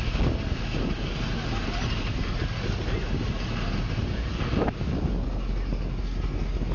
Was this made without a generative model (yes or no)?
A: yes